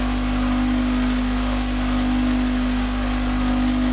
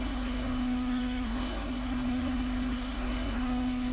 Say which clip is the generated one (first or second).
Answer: second